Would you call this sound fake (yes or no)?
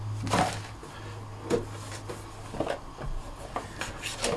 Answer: no